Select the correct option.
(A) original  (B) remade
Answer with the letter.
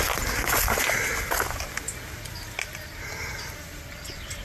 A